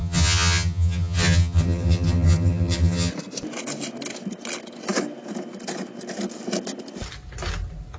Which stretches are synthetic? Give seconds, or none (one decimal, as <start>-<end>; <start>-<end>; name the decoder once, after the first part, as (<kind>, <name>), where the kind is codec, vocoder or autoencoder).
0.0-3.1 (vocoder, HiFi-GAN)